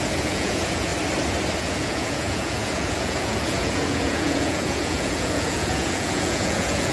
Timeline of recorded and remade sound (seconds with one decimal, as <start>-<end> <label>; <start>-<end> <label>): 0.0-0.9 remade; 0.9-1.6 recorded; 1.6-6.9 remade